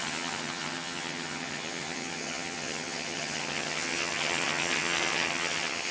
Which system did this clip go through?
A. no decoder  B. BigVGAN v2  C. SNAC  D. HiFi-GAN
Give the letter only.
D